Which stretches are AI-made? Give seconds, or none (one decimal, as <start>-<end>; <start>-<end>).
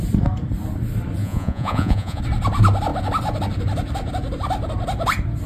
1.2-2.2